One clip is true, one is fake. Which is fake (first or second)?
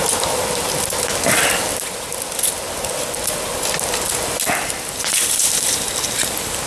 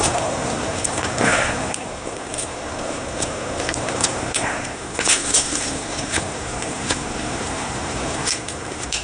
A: second